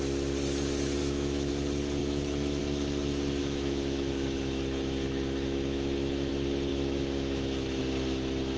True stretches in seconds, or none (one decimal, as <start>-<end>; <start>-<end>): 0.0-1.0; 1.5-2.0; 2.6-3.4; 6.3-6.7; 7.8-8.6

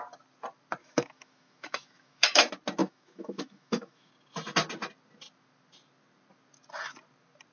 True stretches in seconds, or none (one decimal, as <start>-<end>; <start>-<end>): 0.0-0.8; 2.4-2.8; 4.1-7.5

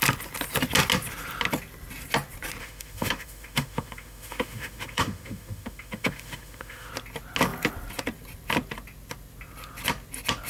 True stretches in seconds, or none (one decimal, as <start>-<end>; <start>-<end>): 0.0-2.6; 6.9-10.5

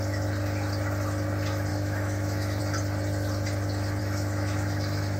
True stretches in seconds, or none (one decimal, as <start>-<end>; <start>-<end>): 0.0-1.7; 2.6-4.0